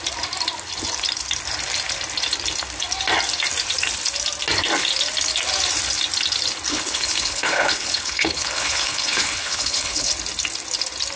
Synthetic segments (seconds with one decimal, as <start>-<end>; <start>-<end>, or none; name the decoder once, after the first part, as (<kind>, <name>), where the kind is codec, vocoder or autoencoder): 6.7-10.1 (codec, HILCodec)